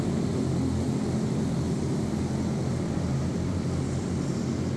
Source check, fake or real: real